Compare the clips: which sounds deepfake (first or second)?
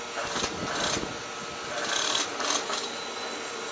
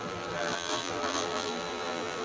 second